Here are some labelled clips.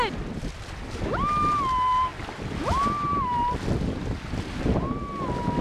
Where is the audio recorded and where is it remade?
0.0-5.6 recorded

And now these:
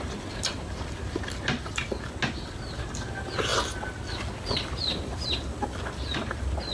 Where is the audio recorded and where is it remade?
0.0-6.7 recorded

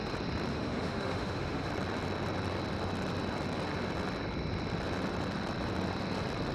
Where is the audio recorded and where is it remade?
0.0-0.5 recorded; 0.5-1.7 remade; 1.7-6.5 recorded

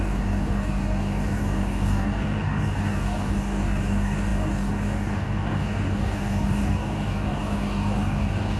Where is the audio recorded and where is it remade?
0.0-8.6 remade

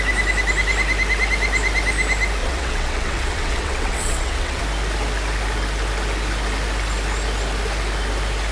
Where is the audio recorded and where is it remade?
0.0-2.4 recorded; 2.4-4.6 remade; 4.6-8.5 recorded

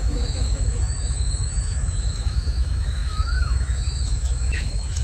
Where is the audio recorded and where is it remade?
0.0-5.0 remade

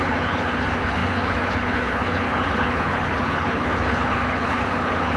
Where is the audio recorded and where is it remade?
0.0-5.2 remade